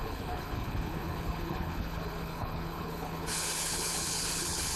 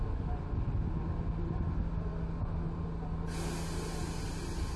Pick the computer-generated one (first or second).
first